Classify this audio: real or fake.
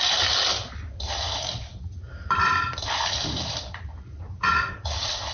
real